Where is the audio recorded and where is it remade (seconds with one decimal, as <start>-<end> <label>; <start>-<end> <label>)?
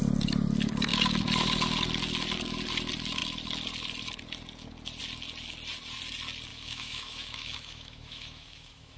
0.0-6.5 recorded; 6.5-9.0 remade